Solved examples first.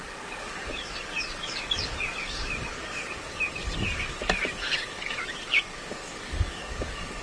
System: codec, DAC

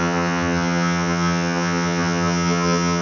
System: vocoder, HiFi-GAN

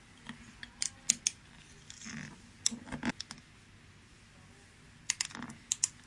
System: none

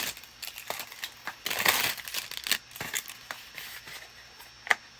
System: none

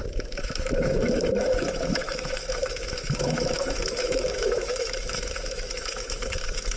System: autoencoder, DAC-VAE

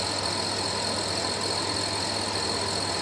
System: none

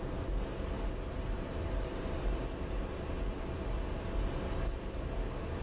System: vocoder, BigVGAN v2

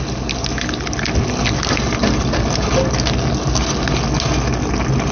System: none